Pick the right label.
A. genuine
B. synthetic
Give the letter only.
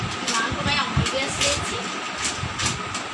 A